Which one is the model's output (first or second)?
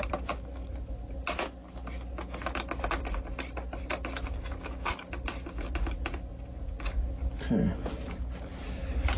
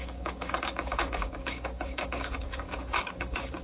second